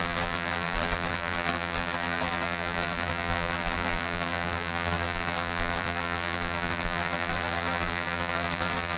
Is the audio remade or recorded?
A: remade